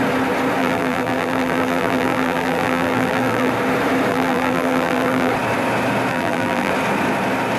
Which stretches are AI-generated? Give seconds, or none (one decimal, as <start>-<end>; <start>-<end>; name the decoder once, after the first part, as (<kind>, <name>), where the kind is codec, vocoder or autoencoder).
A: 0.6-3.5 (vocoder, BigVGAN v2); 4.1-5.3; 6.1-6.7